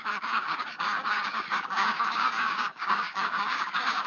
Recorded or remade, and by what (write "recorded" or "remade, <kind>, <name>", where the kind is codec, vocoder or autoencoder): remade, codec, DAC